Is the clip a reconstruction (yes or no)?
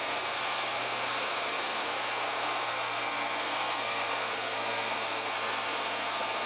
yes